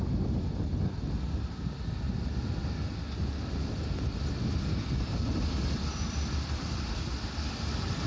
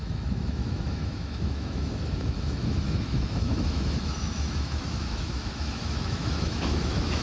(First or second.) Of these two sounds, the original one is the first